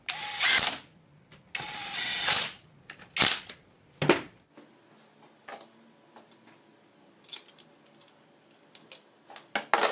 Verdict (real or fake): real